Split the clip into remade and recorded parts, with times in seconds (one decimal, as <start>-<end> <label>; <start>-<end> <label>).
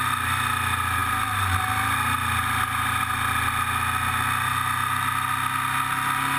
0.0-6.4 recorded